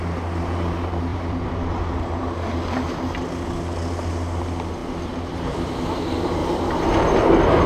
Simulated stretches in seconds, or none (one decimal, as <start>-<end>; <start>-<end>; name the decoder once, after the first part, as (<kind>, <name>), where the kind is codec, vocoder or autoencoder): 1.1-2.1 (vocoder, BigVGAN v2); 4.8-5.7